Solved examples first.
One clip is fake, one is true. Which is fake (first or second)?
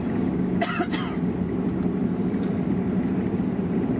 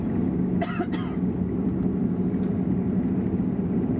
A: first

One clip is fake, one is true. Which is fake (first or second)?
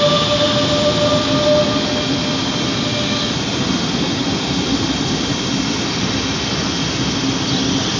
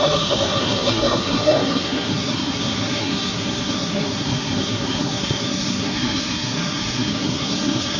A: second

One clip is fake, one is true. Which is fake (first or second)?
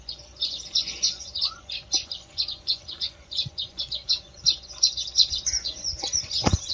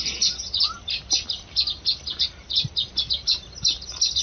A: first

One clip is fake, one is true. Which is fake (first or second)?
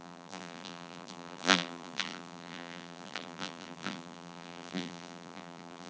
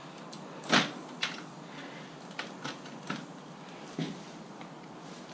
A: first